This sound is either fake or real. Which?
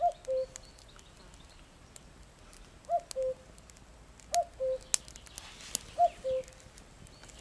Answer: real